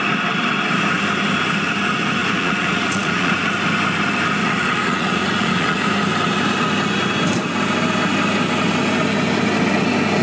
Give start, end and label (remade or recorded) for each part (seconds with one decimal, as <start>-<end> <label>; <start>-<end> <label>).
0.0-2.2 recorded; 2.2-3.5 remade; 3.5-4.4 recorded; 4.4-5.8 remade; 5.8-10.2 recorded